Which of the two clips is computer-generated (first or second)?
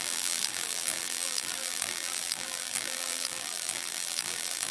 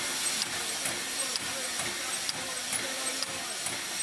first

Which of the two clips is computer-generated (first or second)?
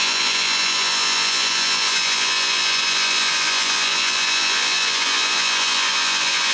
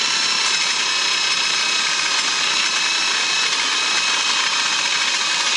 first